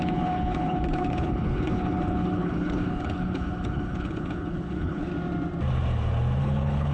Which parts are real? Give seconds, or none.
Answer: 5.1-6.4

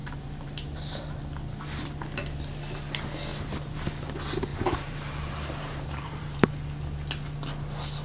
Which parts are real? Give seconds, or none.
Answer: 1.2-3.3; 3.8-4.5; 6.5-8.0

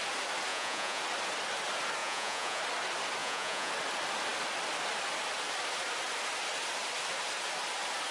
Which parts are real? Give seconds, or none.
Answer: 0.0-0.5; 1.0-2.0; 2.6-3.2; 3.7-8.1

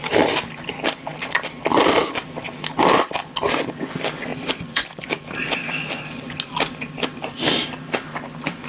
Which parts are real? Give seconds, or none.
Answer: 0.0-1.1; 1.9-4.3; 5.0-8.7

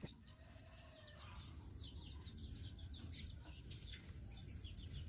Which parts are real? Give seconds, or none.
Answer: 0.0-5.1